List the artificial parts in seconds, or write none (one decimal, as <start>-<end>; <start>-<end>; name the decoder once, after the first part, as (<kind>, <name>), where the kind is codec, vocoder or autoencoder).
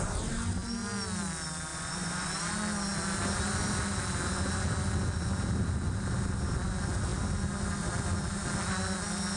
1.7-2.3 (vocoder, Vocos)